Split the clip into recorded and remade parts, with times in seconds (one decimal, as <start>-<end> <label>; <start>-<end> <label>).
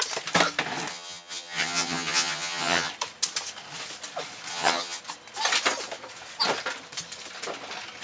0.0-0.9 recorded; 0.9-2.9 remade; 2.9-4.5 recorded; 4.5-5.0 remade; 5.0-8.0 recorded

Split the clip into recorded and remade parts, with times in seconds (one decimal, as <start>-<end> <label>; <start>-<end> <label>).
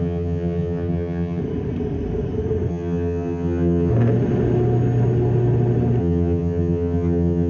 0.0-1.4 remade; 1.4-2.7 recorded; 2.7-3.9 remade; 3.9-6.0 recorded; 6.0-7.5 remade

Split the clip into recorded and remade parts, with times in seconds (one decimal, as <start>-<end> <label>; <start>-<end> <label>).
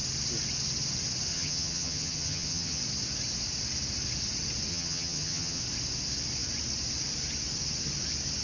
0.0-1.3 recorded; 1.3-2.8 remade; 2.8-4.7 recorded; 4.7-5.6 remade; 5.6-8.4 recorded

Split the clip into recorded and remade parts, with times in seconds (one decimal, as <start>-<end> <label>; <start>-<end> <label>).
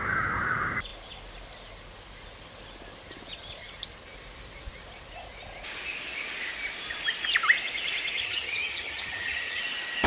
0.0-8.2 recorded; 8.2-9.6 remade; 9.6-10.1 recorded